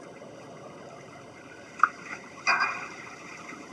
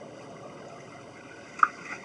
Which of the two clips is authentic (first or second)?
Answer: second